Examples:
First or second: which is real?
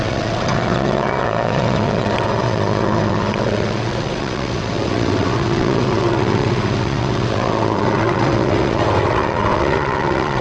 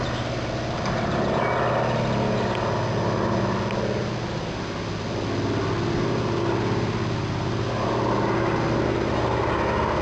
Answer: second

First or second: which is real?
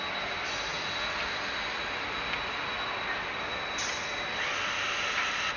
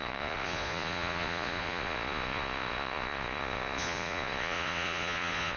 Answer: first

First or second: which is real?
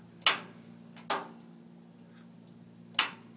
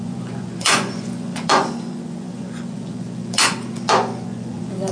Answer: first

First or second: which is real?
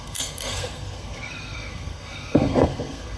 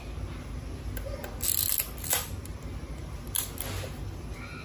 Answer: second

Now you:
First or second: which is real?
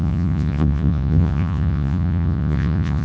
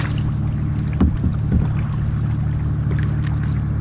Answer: second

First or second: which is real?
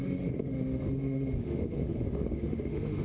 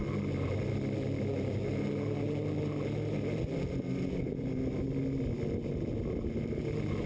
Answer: second